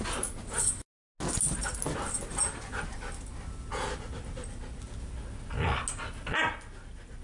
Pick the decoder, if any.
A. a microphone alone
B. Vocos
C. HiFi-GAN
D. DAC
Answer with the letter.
A